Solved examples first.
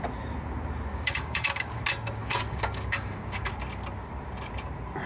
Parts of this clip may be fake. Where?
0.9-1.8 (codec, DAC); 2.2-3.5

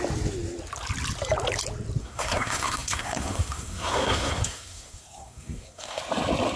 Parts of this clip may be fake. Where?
2.0-6.0 (codec, SNAC)

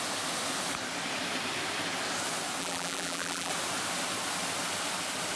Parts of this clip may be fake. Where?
2.6-3.5 (vocoder, BigVGAN v2)

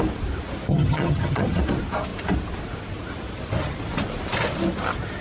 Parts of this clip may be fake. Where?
0.7-1.6 (vocoder, HiFi-GAN)

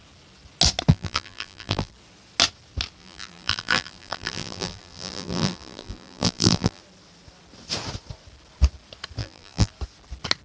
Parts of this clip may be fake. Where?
0.9-1.9 (vocoder, BigVGAN v2); 3.0-6.8; 9.2-9.7

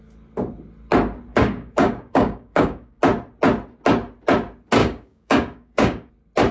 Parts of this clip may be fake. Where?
1.3-3.0 (codec, DAC); 4.8-6.1

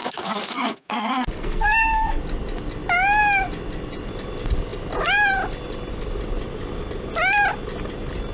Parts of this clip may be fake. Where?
0.0-2.2 (codec, SNAC)

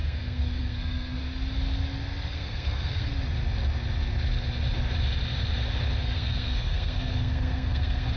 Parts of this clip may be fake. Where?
0.0-1.2 (codec, SNAC); 2.3-3.1; 6.0-8.2